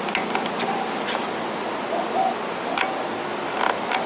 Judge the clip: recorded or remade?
recorded